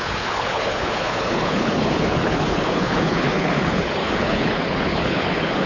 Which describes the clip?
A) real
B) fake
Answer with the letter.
B